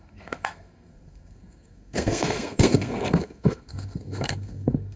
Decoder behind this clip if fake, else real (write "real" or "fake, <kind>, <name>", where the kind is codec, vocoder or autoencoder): fake, codec, SNAC